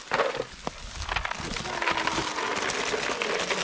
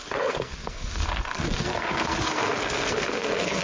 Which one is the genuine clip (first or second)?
first